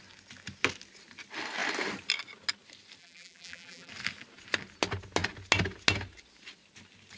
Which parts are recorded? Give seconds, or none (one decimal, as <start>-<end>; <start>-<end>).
0.0-3.0; 3.9-7.2